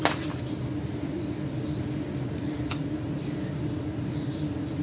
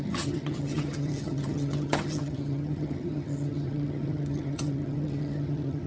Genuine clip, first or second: first